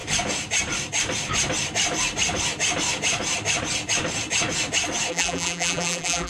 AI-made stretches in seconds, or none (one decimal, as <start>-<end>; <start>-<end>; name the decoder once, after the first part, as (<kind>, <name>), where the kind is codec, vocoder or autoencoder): 5.1-6.3 (vocoder, BigVGAN v2)